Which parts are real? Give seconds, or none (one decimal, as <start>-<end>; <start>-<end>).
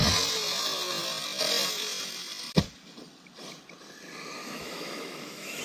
0.0-4.4